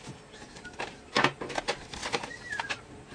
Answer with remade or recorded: recorded